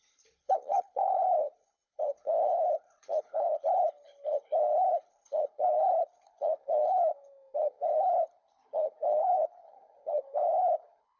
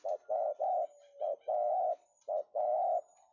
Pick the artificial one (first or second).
first